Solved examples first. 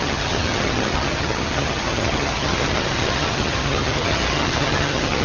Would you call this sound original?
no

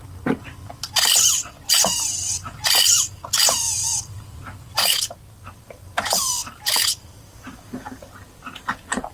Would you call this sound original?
yes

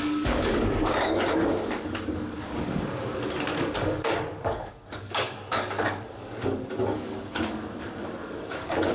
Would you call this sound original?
no